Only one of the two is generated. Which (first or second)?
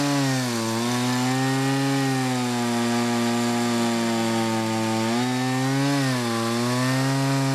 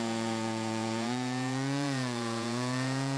second